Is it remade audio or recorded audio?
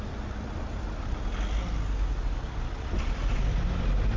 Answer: recorded